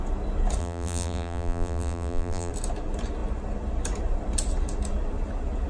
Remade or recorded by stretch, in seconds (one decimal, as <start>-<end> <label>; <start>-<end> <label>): 0.0-0.6 recorded; 0.6-2.5 remade; 2.5-5.7 recorded